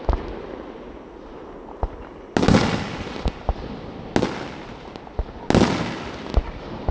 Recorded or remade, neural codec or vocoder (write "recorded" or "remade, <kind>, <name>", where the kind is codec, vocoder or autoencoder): recorded